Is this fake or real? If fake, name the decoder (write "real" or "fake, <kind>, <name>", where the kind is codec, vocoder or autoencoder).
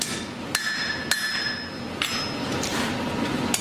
real